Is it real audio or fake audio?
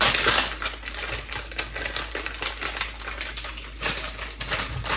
real